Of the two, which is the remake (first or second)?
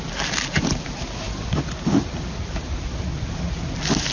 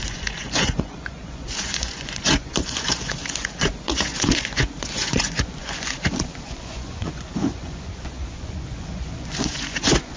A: second